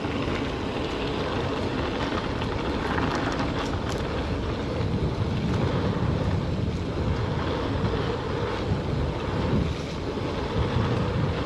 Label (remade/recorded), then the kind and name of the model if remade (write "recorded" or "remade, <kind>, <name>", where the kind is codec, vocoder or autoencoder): recorded